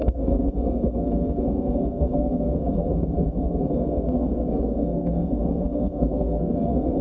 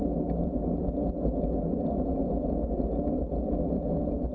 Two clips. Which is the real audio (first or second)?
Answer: second